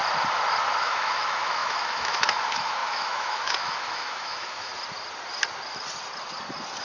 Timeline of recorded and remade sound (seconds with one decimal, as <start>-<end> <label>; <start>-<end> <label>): 0.0-0.8 recorded; 0.8-4.7 remade; 4.7-6.8 recorded